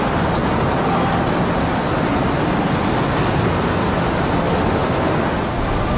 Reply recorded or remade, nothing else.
recorded